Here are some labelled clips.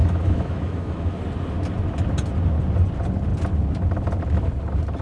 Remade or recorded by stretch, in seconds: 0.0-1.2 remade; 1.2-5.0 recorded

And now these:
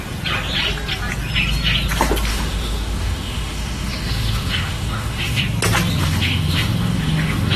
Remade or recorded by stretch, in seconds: 0.0-2.3 recorded; 2.3-5.4 remade; 5.4-6.0 recorded; 6.0-7.6 remade

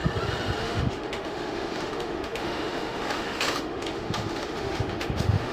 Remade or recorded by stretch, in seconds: 0.0-0.6 recorded; 0.6-5.5 remade

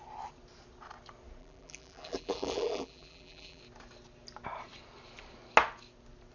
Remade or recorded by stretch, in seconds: 0.0-1.4 recorded; 1.4-3.6 remade; 3.6-6.3 recorded

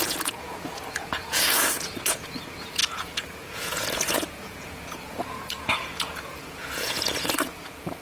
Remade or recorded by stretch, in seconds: 0.0-8.0 remade